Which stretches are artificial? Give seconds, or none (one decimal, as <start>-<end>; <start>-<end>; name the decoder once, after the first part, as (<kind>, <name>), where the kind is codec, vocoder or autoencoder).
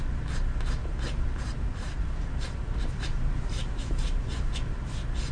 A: 0.8-4.0 (vocoder, BigVGAN v2)